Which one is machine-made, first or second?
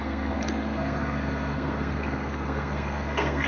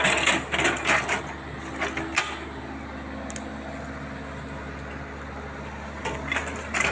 first